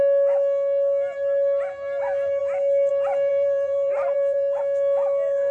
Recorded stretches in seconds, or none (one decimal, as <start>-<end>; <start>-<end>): 0.0-3.3; 4.6-5.5